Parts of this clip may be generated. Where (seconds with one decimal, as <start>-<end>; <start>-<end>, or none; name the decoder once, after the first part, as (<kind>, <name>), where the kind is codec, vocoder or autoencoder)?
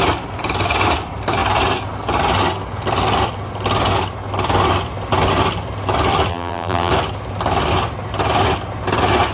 6.3-6.9 (vocoder, BigVGAN v2)